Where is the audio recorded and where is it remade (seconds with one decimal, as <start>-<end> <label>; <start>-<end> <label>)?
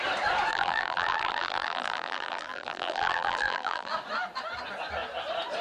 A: 0.0-0.5 recorded; 0.5-3.9 remade; 3.9-5.6 recorded